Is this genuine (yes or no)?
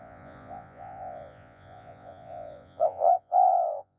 no